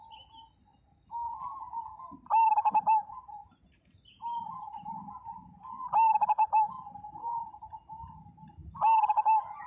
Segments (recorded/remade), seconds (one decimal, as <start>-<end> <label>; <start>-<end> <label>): 0.0-9.7 recorded

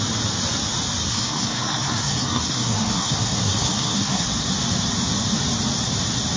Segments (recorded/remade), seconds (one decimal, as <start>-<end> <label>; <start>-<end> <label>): 0.0-1.0 recorded; 1.0-4.3 remade; 4.3-6.4 recorded

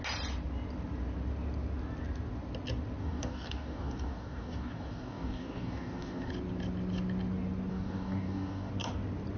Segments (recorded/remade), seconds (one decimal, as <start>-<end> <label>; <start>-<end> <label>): 0.0-3.0 recorded; 3.0-6.3 remade; 6.3-7.7 recorded; 7.7-8.7 remade; 8.7-9.4 recorded

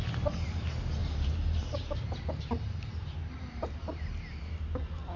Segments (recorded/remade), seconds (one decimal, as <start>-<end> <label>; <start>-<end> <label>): 0.0-1.0 recorded; 1.0-4.0 remade; 4.0-5.2 recorded

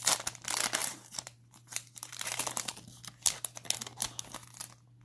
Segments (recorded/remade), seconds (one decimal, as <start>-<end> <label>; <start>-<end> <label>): 0.0-0.8 recorded; 0.8-2.7 remade; 2.7-5.0 recorded

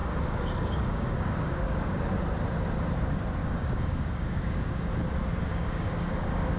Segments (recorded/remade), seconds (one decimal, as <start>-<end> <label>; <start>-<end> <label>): 0.0-2.0 remade; 2.0-3.4 recorded; 3.4-4.9 remade; 4.9-5.5 recorded; 5.5-6.6 remade

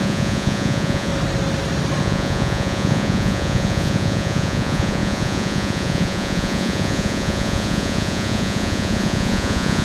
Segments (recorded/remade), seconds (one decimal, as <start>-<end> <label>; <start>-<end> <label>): 0.0-1.1 remade; 1.1-2.0 recorded; 2.0-9.8 remade

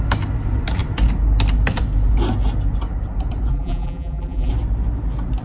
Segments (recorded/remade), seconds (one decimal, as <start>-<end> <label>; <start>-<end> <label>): 0.0-3.5 recorded; 3.5-4.5 remade; 4.5-5.4 recorded